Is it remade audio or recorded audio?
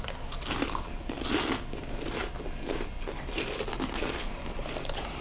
recorded